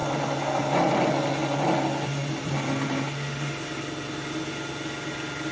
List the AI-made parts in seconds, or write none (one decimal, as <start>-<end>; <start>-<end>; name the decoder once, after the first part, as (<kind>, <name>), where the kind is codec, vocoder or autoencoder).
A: none